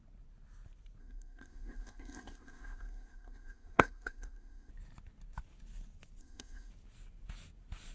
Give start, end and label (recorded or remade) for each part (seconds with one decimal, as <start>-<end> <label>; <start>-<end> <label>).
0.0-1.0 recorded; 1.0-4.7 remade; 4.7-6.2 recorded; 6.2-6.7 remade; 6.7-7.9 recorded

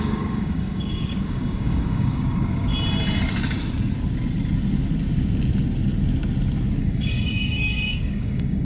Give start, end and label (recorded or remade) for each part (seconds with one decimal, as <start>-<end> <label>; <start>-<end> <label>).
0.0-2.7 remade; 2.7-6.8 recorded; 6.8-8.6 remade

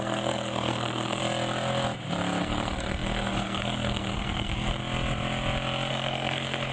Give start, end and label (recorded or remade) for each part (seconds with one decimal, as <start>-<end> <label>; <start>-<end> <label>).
0.0-1.2 remade; 1.2-2.4 recorded; 2.4-4.8 remade; 4.8-5.9 recorded; 5.9-6.7 remade